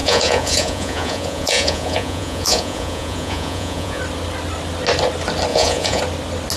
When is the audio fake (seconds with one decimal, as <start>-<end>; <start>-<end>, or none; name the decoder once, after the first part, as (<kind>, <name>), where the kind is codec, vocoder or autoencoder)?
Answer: 0.0-4.0 (vocoder, Vocos); 5.5-6.0